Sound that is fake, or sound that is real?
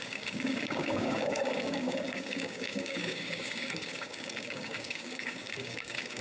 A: fake